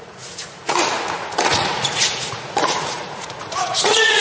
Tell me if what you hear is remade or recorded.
remade